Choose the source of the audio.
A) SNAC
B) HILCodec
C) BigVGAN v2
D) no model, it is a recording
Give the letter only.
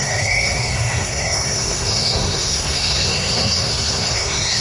A